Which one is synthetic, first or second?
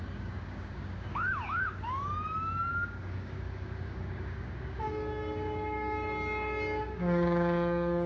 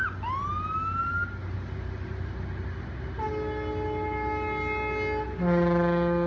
first